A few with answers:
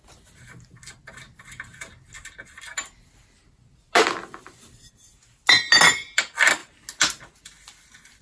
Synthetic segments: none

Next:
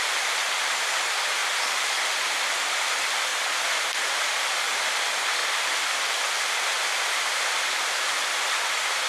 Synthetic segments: none

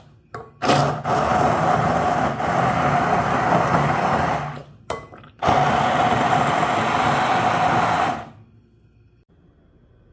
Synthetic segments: none